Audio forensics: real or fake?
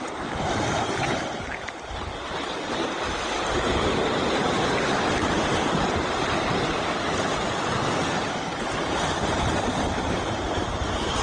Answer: real